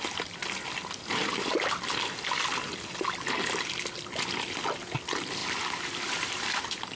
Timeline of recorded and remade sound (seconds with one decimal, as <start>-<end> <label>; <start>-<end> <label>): 0.0-7.0 recorded